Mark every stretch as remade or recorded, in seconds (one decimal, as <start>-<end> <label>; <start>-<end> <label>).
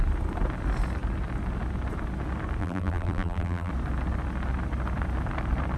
0.0-2.6 recorded; 2.6-3.7 remade; 3.7-5.8 recorded